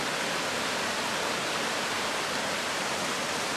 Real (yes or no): yes